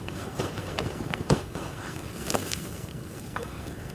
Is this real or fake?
fake